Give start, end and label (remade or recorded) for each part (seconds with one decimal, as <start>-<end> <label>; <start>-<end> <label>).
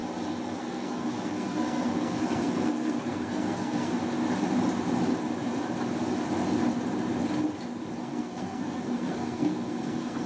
0.0-0.6 recorded; 0.6-4.0 remade; 4.0-8.0 recorded; 8.0-10.3 remade